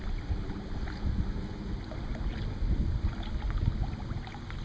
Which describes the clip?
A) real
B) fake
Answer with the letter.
A